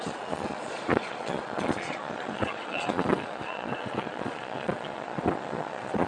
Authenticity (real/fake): fake